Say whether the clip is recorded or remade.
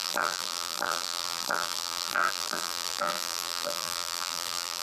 remade